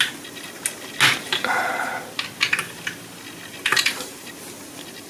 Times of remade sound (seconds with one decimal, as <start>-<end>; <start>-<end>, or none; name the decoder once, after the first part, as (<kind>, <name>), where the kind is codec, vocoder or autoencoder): 1.3-1.9 (vocoder, BigVGAN v2); 3.7-4.3